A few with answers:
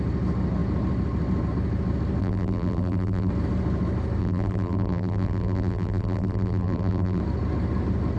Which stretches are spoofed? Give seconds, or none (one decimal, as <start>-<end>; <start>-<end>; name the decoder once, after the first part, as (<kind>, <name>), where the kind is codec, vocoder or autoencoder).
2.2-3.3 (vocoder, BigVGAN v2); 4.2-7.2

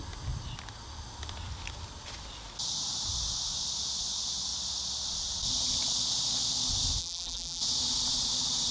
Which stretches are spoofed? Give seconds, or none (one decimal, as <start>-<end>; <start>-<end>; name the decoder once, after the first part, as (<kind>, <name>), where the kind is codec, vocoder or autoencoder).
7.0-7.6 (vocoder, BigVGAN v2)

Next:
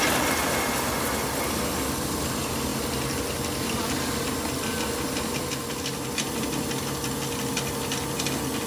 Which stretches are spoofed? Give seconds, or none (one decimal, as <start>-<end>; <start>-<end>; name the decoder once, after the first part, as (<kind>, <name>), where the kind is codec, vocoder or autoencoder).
none